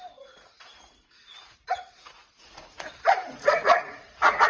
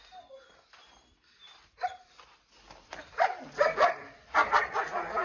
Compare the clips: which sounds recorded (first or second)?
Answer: second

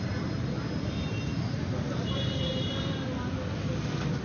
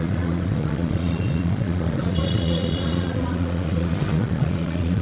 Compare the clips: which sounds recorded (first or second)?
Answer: first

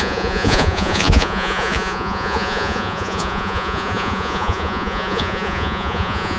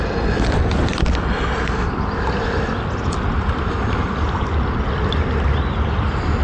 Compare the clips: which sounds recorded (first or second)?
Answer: second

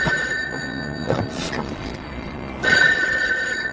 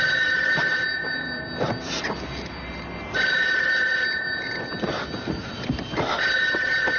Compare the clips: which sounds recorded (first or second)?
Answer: second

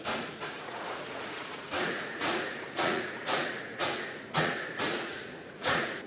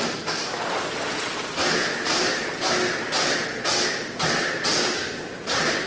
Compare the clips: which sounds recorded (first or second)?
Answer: second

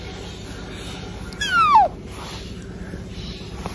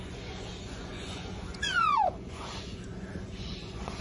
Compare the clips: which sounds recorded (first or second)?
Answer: first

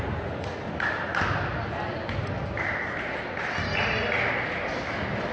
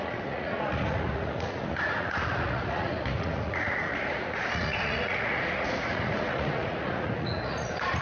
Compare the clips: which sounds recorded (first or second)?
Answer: first